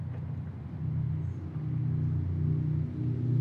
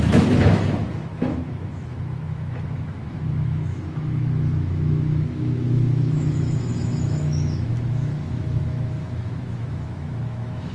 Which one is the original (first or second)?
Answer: first